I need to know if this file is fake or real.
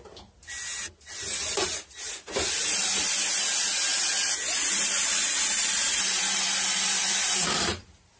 real